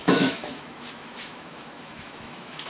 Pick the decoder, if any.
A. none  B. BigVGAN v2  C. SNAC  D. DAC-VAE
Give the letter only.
D